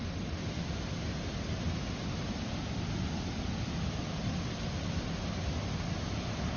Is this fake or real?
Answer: real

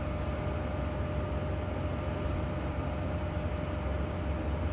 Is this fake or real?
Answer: real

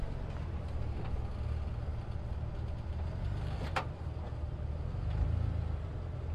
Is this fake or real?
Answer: real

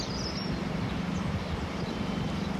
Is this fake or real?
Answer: fake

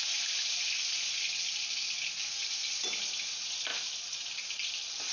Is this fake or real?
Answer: real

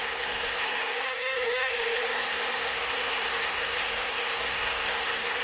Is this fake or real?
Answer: fake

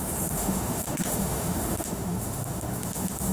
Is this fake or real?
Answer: fake